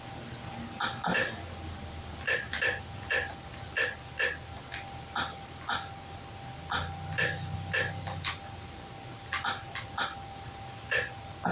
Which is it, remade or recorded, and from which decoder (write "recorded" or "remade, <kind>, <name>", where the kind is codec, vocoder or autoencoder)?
recorded